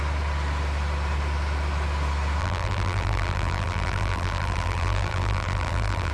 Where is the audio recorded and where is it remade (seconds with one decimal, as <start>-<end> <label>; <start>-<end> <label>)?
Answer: 0.0-2.4 recorded; 2.4-6.1 remade